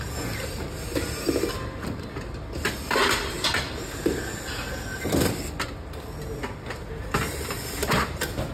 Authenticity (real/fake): real